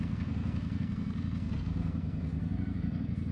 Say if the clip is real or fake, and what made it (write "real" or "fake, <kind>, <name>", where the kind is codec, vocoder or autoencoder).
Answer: fake, codec, SNAC